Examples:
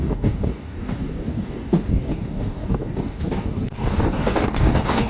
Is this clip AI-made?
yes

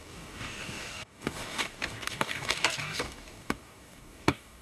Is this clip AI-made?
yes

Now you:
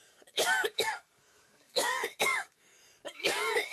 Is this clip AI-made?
yes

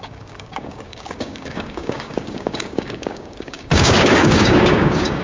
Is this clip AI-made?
yes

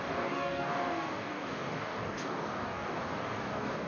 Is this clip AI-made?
yes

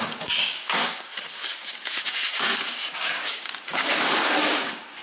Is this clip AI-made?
yes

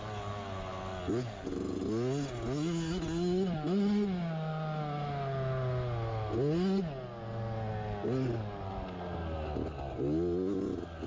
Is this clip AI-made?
no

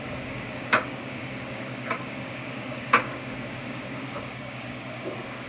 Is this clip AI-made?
yes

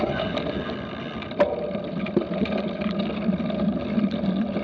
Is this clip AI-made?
no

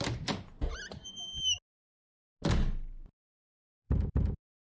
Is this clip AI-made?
no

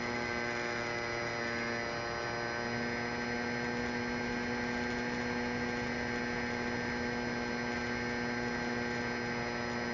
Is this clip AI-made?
no